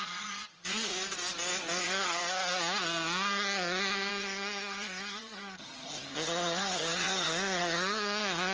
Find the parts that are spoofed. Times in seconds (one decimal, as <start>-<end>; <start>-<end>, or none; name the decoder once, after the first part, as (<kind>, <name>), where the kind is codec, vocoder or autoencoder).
0.0-0.9 (vocoder, HiFi-GAN); 1.8-2.2; 4.1-8.5